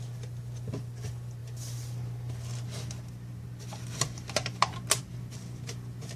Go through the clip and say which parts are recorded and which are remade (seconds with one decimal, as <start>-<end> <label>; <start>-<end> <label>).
0.0-6.2 recorded